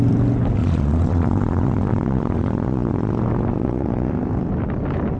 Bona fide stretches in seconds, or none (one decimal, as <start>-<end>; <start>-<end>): 0.0-0.6; 3.1-3.6; 4.1-5.2